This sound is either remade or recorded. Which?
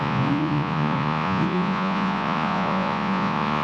remade